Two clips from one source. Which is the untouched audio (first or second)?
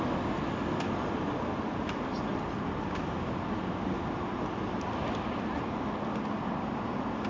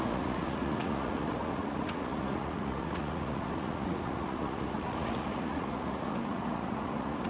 first